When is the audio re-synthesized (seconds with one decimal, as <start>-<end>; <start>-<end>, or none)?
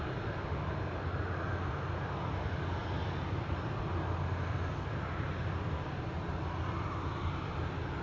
none